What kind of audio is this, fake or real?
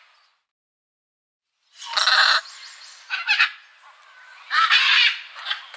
real